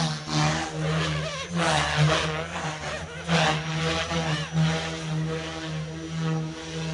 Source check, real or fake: real